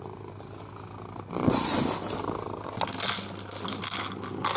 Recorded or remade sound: recorded